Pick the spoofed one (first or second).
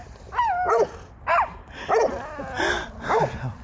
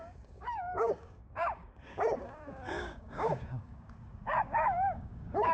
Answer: second